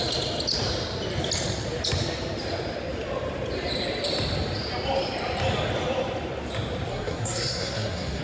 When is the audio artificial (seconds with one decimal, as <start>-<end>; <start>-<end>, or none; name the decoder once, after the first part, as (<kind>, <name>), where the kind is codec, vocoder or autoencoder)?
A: 6.9-8.2 (codec, SNAC)